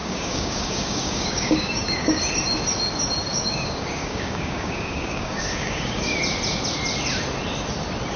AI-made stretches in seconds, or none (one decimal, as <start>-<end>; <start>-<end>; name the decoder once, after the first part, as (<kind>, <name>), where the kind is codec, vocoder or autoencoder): 0.0-2.2 (codec, DAC); 3.3-6.2